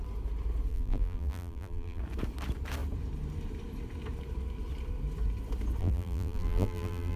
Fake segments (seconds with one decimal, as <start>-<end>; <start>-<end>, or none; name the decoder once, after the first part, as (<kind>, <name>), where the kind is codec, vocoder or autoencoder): 0.7-2.0 (vocoder, BigVGAN v2); 5.8-7.2